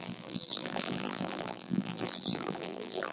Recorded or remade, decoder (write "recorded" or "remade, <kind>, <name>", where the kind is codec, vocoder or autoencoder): remade, vocoder, BigVGAN v2